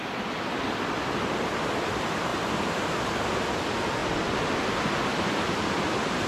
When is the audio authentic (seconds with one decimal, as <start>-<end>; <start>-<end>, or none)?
0.0-6.3

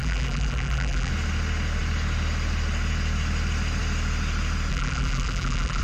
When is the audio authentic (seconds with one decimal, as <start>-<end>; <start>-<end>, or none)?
1.1-4.7